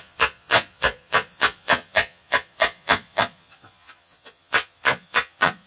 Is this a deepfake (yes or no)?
yes